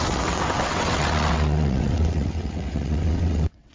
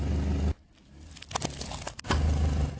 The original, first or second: second